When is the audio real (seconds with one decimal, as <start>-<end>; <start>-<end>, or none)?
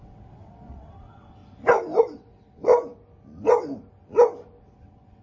1.4-2.0; 2.7-4.6